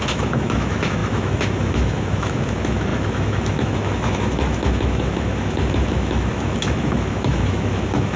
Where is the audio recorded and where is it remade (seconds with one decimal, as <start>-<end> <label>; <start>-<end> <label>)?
0.0-8.2 remade